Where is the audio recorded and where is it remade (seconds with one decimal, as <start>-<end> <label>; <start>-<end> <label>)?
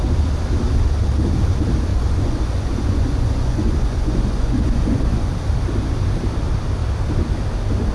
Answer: 0.0-1.9 recorded; 1.9-5.3 remade; 5.3-7.9 recorded